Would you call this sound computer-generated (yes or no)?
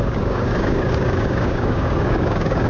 yes